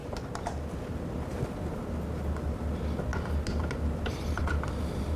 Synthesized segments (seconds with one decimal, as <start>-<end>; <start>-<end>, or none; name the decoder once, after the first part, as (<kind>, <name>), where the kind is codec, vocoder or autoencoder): none